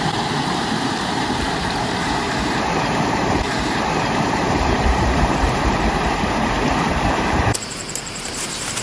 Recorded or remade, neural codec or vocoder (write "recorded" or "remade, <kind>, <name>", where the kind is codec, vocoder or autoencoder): remade, vocoder, BigVGAN v2